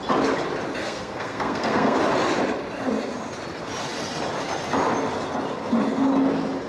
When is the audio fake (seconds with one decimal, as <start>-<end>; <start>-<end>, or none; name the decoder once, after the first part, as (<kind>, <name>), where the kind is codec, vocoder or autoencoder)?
0.8-2.0 (codec, SNAC)